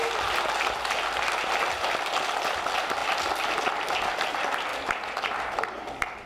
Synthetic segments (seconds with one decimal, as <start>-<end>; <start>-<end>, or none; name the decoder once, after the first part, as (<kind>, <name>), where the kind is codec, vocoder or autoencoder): none